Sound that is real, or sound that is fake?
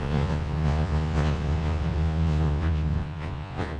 fake